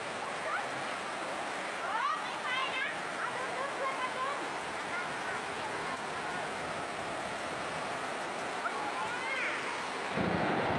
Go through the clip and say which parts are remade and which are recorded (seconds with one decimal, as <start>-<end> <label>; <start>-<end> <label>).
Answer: 0.0-10.8 recorded